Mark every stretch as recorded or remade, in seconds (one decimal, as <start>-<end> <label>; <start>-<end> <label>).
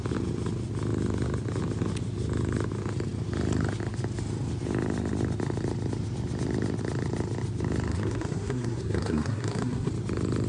0.0-7.9 recorded; 7.9-9.9 remade; 9.9-10.5 recorded